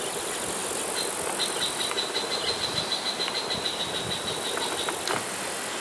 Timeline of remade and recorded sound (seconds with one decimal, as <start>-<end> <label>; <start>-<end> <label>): 0.0-5.8 recorded